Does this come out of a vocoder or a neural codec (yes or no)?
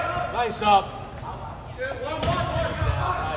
no